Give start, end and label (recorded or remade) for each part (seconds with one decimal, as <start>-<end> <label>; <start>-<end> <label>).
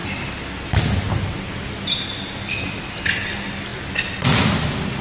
0.0-5.0 recorded